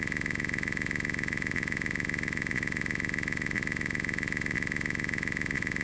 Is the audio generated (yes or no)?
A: yes